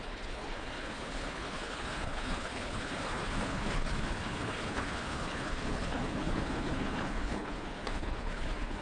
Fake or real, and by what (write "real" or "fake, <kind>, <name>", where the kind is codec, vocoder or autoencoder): fake, codec, HILCodec